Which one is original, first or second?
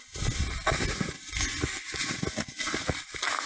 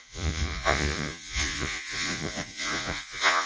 first